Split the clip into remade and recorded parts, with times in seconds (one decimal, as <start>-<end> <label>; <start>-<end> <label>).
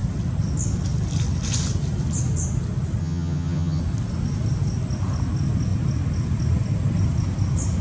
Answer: 0.0-3.0 recorded; 3.0-3.8 remade; 3.8-7.8 recorded